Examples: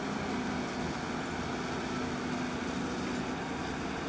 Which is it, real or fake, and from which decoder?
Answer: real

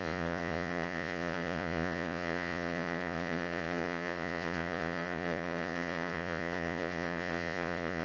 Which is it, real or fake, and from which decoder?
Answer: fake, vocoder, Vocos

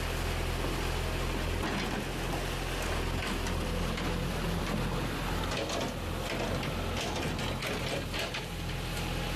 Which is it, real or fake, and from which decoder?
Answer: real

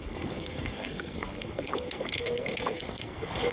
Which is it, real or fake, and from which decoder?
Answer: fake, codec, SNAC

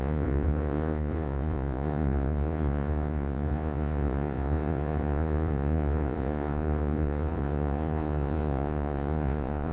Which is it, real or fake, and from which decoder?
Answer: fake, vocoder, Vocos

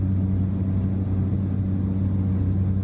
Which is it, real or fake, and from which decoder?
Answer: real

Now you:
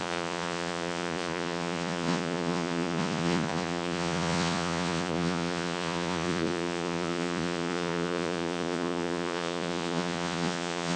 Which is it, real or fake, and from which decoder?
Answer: fake, vocoder, Vocos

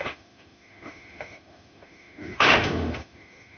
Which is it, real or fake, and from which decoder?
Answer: fake, autoencoder, DAC-VAE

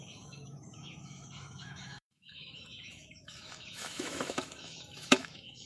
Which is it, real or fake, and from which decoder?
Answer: fake, autoencoder, DAC-VAE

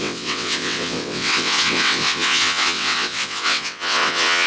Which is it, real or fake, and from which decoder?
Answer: fake, vocoder, WaveNeXt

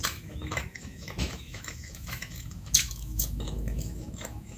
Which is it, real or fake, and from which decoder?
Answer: fake, autoencoder, DAC-VAE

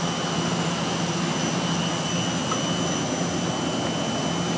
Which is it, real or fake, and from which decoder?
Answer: real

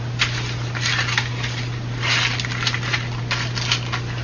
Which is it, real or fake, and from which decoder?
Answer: real